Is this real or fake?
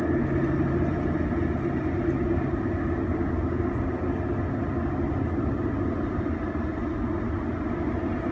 real